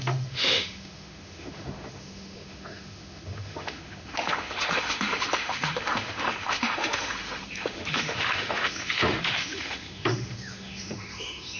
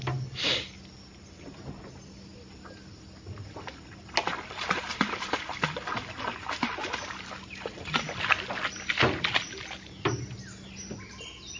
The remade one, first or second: first